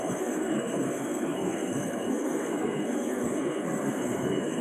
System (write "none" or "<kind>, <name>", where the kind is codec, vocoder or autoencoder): codec, SNAC